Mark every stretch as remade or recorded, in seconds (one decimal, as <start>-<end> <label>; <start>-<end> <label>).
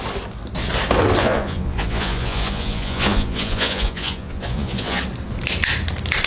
0.0-1.2 recorded; 1.2-5.0 remade; 5.0-6.3 recorded